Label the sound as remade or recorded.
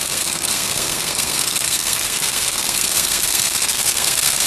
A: remade